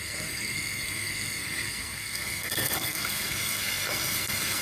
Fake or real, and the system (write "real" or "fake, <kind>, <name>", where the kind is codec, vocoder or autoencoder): fake, codec, SNAC